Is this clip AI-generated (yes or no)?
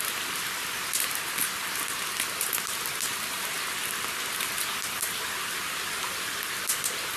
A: no